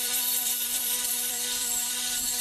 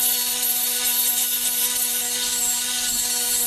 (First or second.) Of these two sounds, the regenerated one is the first